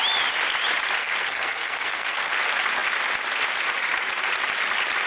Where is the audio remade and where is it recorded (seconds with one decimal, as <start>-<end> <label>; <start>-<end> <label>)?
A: 0.0-1.0 recorded; 1.0-2.3 remade; 2.3-5.1 recorded